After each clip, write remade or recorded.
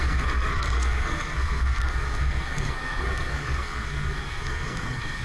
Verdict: remade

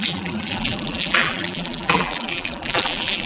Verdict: remade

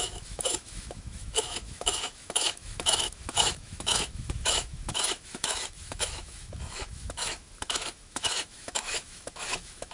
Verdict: remade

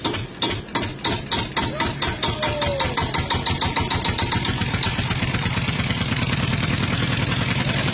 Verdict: remade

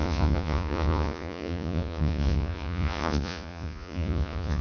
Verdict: remade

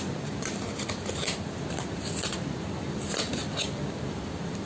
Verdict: recorded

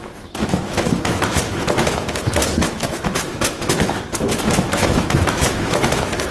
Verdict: remade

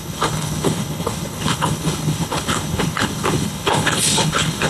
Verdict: remade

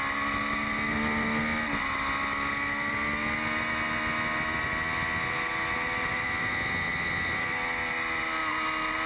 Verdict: recorded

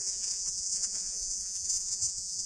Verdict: remade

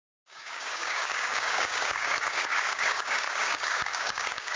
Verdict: remade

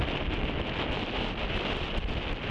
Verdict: recorded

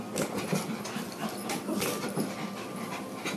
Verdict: recorded